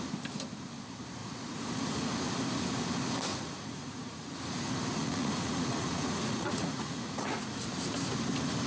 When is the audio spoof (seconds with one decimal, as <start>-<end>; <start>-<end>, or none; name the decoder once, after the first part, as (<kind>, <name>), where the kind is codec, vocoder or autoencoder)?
1.2-2.1 (vocoder, Vocos); 3.3-4.3; 4.9-7.6